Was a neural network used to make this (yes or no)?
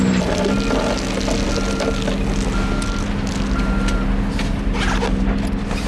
no